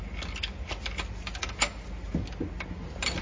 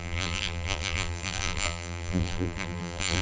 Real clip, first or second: first